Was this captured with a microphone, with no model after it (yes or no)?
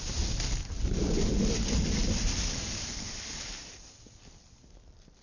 yes